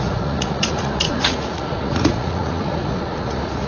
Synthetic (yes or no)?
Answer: yes